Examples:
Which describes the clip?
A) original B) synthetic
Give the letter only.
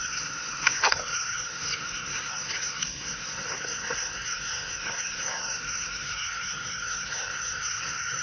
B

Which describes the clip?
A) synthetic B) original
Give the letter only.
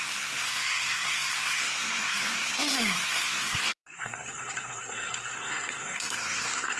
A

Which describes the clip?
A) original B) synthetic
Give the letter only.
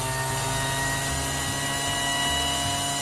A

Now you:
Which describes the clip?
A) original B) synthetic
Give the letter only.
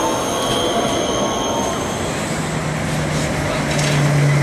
A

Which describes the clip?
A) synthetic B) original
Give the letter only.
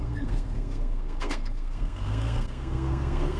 A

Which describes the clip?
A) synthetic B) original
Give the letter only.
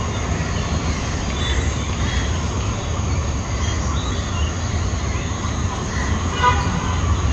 B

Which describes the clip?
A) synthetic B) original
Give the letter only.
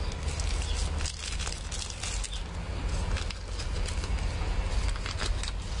B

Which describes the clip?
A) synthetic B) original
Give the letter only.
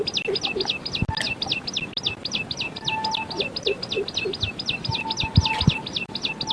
B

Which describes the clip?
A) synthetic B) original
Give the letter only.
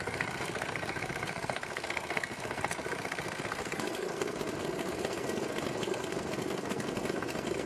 A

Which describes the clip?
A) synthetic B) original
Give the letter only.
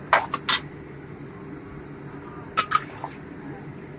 B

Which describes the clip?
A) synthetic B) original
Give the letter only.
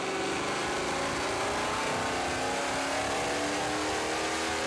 B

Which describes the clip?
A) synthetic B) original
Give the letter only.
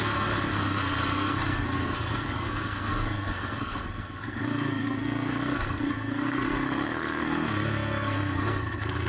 A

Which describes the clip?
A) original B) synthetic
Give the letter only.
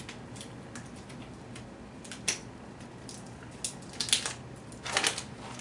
A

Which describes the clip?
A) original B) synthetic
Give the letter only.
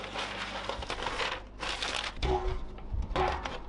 A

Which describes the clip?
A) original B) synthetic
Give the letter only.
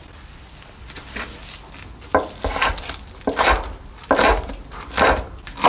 A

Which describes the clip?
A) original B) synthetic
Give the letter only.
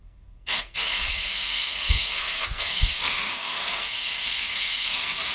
B